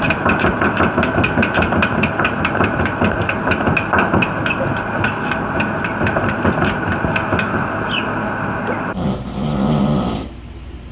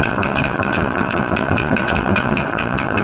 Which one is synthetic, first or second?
second